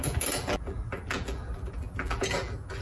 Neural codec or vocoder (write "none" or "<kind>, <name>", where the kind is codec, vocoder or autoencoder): vocoder, BigVGAN v2